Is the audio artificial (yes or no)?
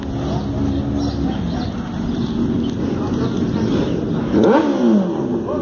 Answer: no